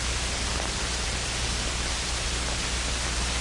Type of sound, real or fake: real